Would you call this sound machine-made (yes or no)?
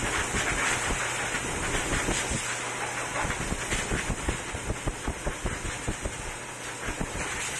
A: no